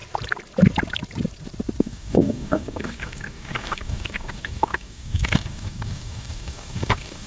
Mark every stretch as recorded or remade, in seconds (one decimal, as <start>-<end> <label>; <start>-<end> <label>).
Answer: 0.0-1.8 recorded; 1.8-7.3 remade